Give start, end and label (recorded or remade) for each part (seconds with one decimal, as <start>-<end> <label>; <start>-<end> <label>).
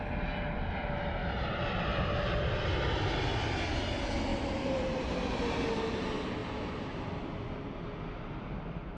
0.0-1.2 recorded; 1.2-2.2 remade; 2.2-4.3 recorded; 4.3-5.6 remade; 5.6-6.4 recorded; 6.4-7.0 remade; 7.0-9.0 recorded